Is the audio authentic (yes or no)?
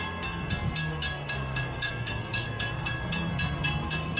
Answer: no